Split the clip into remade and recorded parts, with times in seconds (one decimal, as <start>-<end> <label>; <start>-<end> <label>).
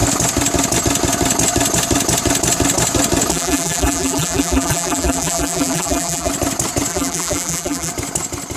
0.0-3.3 recorded; 3.3-6.3 remade; 6.3-6.9 recorded; 6.9-7.9 remade; 7.9-8.6 recorded